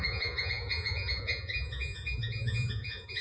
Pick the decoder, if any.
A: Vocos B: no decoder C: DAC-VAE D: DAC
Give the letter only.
A